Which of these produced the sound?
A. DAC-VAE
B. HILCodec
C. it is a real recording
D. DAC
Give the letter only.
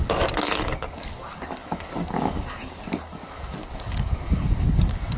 D